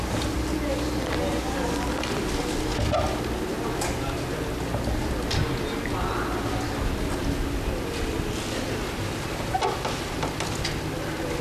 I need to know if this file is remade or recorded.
recorded